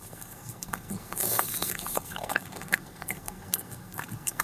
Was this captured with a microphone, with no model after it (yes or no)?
no